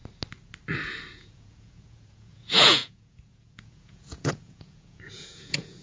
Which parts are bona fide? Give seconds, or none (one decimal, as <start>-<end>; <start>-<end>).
0.0-1.1